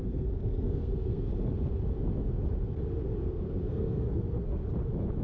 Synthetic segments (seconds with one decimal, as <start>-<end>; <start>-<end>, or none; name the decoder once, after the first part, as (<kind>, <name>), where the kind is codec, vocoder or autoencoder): 0.0-1.3 (codec, SNAC); 3.2-4.6